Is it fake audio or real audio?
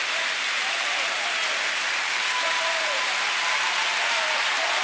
fake